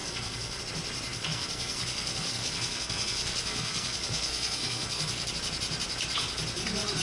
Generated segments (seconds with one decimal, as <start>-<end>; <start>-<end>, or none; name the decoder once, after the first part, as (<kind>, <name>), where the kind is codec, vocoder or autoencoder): 0.0-0.6 (codec, SNAC); 1.1-5.3